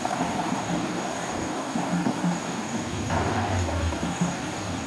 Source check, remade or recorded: remade